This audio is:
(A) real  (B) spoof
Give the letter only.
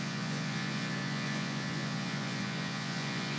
B